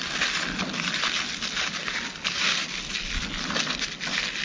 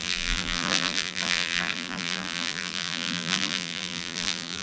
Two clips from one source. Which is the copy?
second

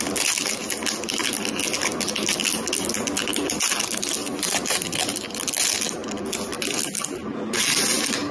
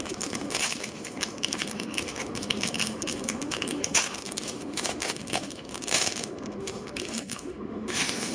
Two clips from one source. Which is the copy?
second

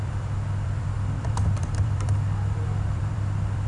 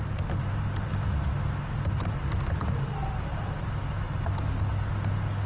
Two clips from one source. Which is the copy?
first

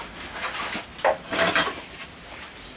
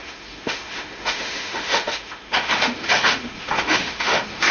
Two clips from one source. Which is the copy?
second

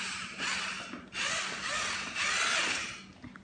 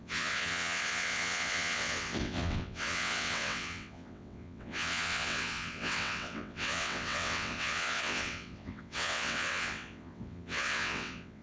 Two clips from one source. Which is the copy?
second